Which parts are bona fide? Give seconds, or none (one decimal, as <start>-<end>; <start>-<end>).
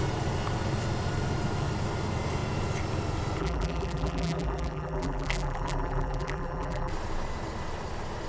0.0-3.4; 6.9-8.3